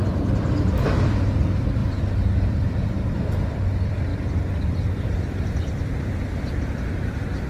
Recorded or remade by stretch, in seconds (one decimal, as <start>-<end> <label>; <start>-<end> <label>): 0.0-7.5 remade